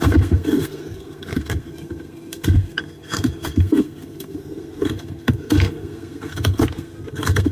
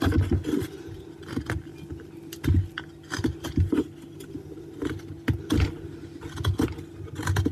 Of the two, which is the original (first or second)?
second